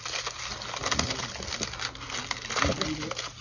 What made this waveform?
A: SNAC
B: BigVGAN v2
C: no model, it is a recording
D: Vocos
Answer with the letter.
C